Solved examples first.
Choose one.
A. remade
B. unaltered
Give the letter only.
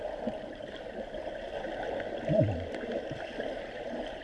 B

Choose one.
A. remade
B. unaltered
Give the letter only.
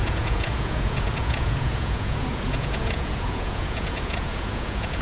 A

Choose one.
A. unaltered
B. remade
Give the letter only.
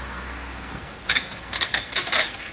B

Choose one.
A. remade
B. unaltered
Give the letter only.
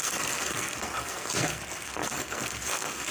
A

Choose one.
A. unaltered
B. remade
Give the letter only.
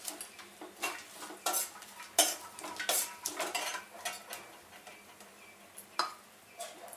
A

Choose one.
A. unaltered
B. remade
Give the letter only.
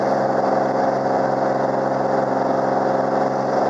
A